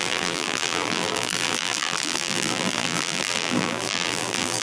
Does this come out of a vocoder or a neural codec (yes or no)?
yes